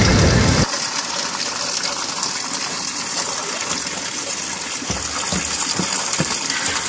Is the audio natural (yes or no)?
yes